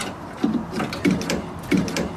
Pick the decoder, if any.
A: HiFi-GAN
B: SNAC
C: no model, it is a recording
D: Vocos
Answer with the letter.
C